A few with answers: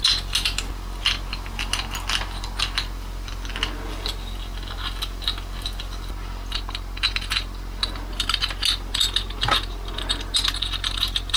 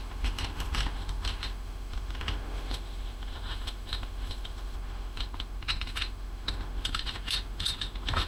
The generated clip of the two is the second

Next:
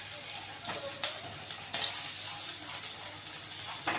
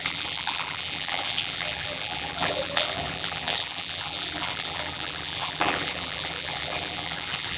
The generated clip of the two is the second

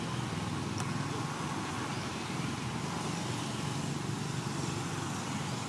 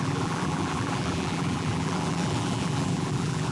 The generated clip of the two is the second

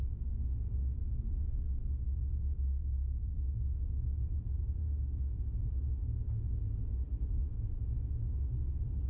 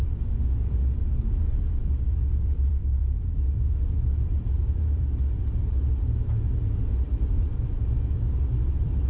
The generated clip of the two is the second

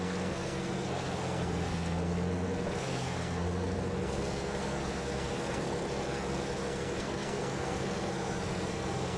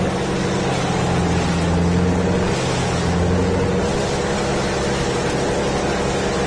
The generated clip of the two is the first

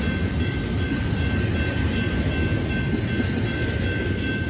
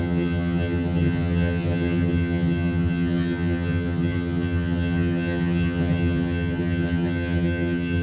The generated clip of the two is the second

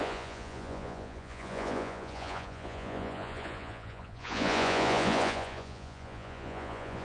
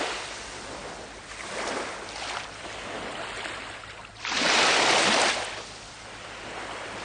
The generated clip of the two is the first